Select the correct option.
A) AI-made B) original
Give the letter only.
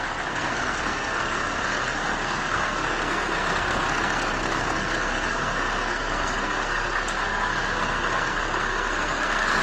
A